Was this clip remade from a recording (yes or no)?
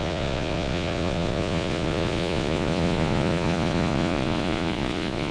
yes